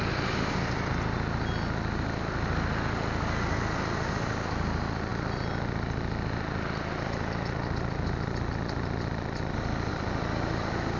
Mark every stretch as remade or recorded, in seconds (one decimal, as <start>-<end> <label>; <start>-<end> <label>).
0.0-11.0 recorded